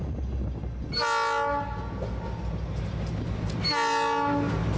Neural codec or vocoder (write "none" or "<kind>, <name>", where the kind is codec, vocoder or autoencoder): none